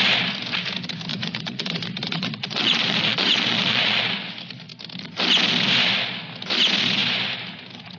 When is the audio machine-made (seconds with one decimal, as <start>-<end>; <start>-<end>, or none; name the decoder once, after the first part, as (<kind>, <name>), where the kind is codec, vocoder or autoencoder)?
1.1-4.0 (vocoder, Vocos)